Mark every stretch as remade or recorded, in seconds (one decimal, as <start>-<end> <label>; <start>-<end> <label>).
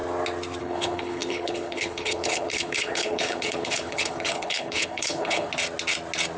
0.0-0.6 recorded; 0.6-5.5 remade; 5.5-6.4 recorded